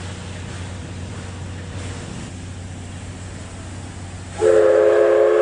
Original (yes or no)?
yes